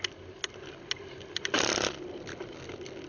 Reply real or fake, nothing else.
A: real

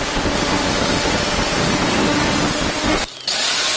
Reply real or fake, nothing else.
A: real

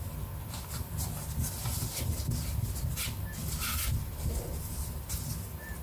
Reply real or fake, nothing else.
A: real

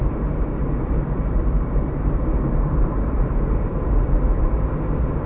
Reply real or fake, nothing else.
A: fake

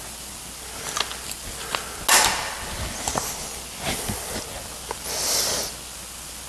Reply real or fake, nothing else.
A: real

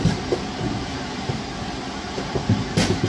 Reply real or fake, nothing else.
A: real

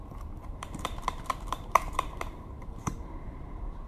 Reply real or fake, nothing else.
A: fake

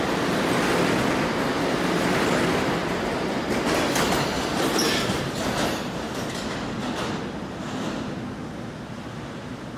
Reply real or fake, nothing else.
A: real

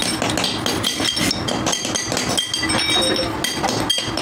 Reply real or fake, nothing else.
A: real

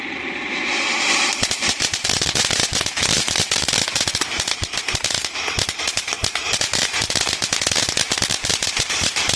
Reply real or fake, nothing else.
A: fake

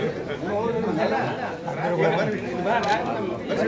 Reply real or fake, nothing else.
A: real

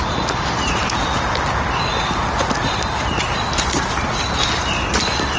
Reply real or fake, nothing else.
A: real